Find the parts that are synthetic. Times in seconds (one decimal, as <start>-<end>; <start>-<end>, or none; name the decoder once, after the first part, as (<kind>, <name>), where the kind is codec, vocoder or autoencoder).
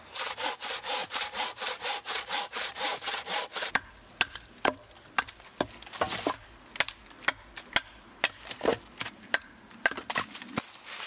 1.0-3.7 (vocoder, BigVGAN v2)